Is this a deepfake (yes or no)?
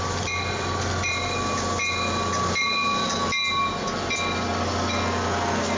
no